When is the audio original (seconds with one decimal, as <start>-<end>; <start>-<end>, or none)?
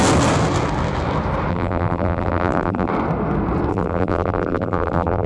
0.0-1.5; 2.9-3.7